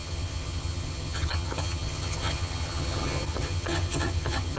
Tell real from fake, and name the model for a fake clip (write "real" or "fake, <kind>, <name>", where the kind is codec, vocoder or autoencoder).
fake, vocoder, HiFi-GAN